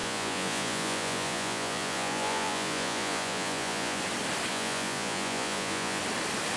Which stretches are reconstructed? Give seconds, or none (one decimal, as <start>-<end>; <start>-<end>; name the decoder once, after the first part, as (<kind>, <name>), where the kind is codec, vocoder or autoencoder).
0.0-4.0 (vocoder, Vocos); 4.5-6.0